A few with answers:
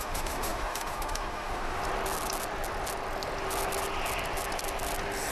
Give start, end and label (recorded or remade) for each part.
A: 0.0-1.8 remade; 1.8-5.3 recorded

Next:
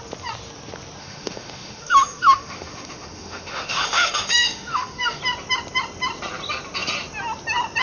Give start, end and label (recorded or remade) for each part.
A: 0.0-1.0 recorded; 1.0-5.2 remade; 5.2-7.8 recorded

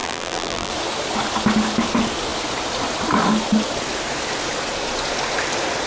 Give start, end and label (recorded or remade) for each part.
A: 0.0-0.7 remade; 0.7-5.9 recorded

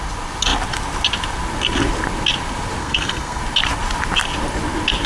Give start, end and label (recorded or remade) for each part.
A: 0.0-2.8 recorded; 2.8-3.4 remade; 3.4-5.1 recorded